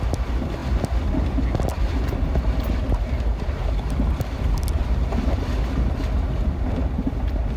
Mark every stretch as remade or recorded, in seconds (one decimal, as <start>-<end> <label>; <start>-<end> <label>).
0.0-0.6 remade; 0.6-4.2 recorded; 4.2-7.6 remade

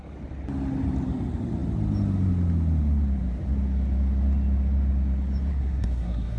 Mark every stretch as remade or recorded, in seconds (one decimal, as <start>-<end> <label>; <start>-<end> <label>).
0.0-5.5 recorded; 5.5-6.4 remade